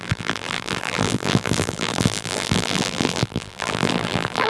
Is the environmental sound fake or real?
fake